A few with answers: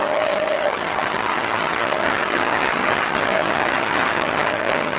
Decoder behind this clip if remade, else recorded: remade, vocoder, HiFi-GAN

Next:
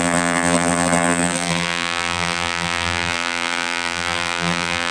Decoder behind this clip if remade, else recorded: remade, vocoder, BigVGAN v2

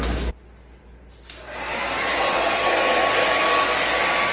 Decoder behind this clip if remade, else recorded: recorded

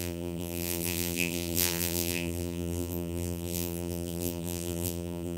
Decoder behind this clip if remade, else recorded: remade, vocoder, BigVGAN v2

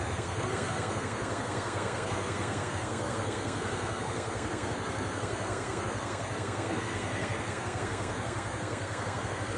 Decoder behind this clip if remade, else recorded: remade, codec, SNAC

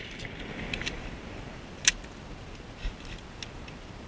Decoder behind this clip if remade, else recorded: recorded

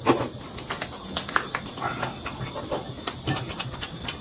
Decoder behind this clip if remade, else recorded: recorded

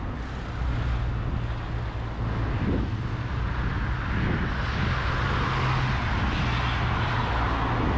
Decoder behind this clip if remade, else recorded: recorded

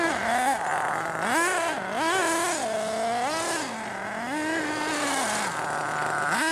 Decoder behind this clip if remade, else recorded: recorded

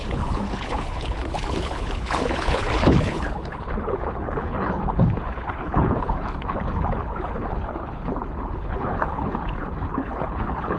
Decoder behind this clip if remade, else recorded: remade, codec, HILCodec